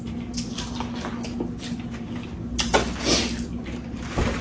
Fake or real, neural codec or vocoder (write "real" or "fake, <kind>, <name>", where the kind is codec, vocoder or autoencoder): real